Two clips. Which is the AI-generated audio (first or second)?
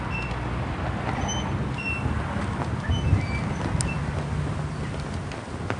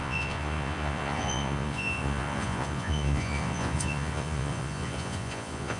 second